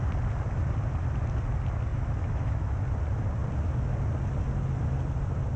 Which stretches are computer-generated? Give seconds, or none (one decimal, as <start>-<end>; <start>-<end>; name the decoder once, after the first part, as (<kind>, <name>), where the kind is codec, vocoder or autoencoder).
1.9-2.8 (autoencoder, DAC-VAE)